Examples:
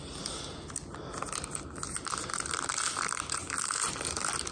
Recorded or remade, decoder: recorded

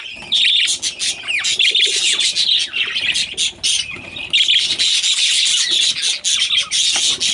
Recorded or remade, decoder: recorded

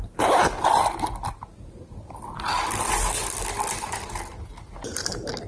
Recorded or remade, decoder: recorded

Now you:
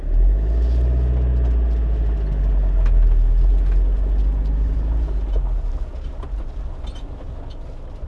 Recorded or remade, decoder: recorded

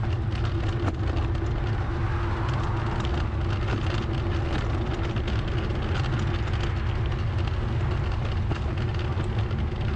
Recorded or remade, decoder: recorded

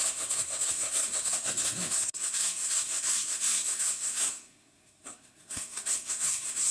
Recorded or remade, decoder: remade, codec, SNAC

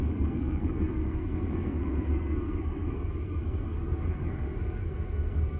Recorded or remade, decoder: remade, codec, SNAC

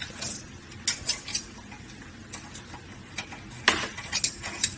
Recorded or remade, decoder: recorded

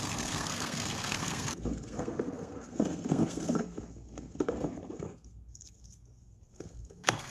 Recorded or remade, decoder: remade, codec, SNAC